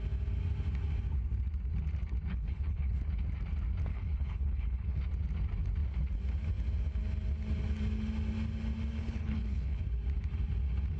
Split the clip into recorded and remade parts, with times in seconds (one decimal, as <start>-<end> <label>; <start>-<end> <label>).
0.0-2.3 recorded; 2.3-3.0 remade; 3.0-3.9 recorded; 3.9-5.0 remade; 5.0-9.0 recorded; 9.0-9.8 remade; 9.8-11.0 recorded